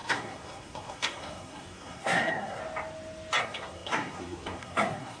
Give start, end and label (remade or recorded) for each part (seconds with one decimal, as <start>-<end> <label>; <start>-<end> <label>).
0.0-2.6 remade; 2.6-3.4 recorded; 3.4-5.2 remade